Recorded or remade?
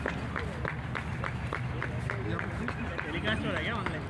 recorded